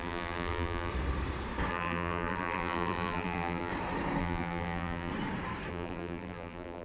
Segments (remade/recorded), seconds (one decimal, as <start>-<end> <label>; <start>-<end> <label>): 0.0-0.9 remade; 0.9-1.7 recorded; 1.7-3.7 remade; 3.7-4.2 recorded; 4.2-5.1 remade; 5.1-5.7 recorded; 5.7-6.8 remade